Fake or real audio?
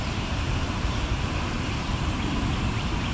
fake